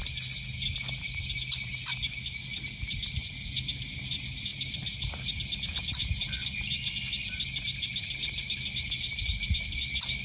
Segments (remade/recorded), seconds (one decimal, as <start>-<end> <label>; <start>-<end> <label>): 0.0-10.2 recorded